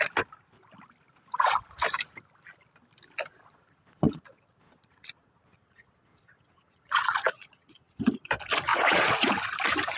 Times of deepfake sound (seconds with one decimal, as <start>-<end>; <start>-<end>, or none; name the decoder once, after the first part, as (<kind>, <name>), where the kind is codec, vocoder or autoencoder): 3.3-8.0 (vocoder, Vocos); 8.7-9.3